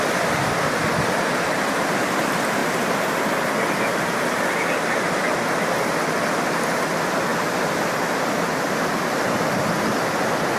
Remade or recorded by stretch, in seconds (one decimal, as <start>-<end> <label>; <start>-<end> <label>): 0.0-10.6 recorded